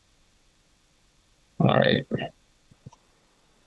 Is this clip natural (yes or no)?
no